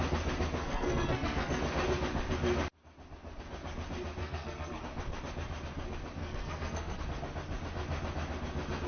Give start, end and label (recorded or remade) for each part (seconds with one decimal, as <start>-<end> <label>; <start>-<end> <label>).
0.0-0.6 recorded; 0.6-1.6 remade; 1.6-4.2 recorded; 4.2-4.8 remade; 4.8-6.2 recorded; 6.2-7.0 remade; 7.0-8.9 recorded